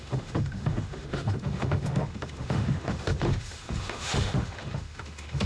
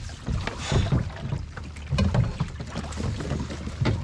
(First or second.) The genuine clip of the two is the second